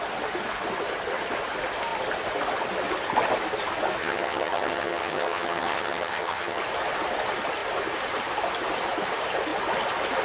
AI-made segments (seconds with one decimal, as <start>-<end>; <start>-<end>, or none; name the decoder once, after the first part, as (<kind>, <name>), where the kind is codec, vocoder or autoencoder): 4.0-6.6 (vocoder, HiFi-GAN)